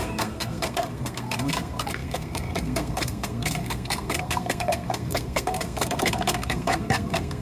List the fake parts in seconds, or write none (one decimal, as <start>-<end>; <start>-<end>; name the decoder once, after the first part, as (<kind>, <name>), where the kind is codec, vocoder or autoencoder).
0.0-7.4 (codec, SNAC)